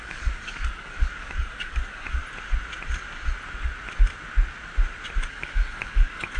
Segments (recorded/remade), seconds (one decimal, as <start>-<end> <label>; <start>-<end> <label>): 0.0-2.2 remade; 2.2-5.3 recorded; 5.3-6.4 remade